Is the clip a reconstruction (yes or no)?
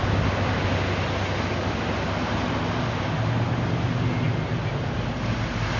no